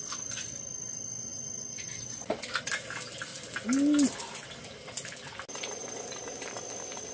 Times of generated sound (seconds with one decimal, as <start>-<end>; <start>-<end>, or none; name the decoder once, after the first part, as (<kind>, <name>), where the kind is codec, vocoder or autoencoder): none